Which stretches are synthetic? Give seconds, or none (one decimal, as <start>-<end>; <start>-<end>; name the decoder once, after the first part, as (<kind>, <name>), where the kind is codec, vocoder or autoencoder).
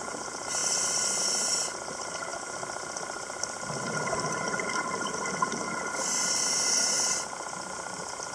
0.6-1.2 (vocoder, BigVGAN v2)